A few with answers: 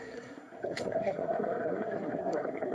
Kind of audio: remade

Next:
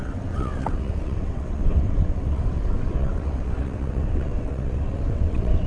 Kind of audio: remade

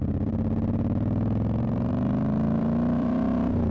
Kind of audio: remade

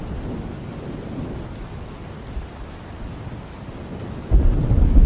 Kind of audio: recorded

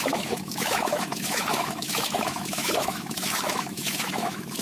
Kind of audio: remade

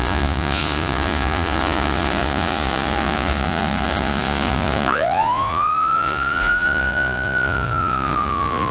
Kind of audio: remade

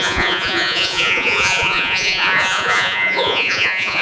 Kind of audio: remade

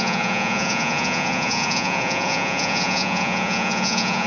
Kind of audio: remade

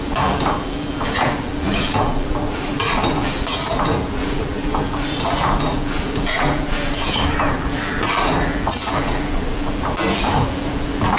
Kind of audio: remade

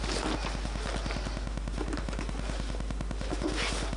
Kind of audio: recorded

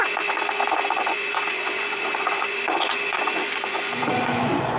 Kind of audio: remade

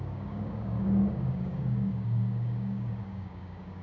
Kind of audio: remade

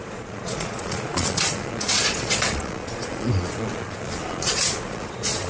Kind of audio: remade